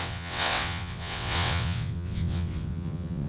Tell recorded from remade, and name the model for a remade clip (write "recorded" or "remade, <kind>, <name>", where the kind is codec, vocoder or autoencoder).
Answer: remade, vocoder, WaveNeXt